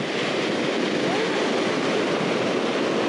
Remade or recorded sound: recorded